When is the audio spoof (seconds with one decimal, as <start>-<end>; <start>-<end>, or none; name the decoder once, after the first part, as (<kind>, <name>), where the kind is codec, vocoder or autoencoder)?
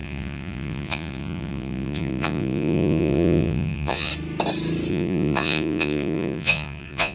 0.0-4.1 (vocoder, Vocos); 4.9-7.1